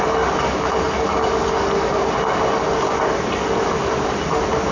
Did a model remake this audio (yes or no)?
no